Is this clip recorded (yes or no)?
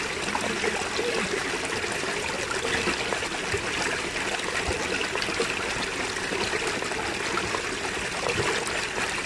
yes